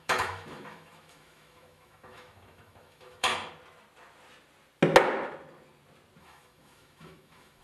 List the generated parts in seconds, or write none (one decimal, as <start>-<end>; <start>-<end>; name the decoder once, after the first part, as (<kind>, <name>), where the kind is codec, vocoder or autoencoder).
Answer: 0.0-3.3 (autoencoder, DAC-VAE); 6.2-7.6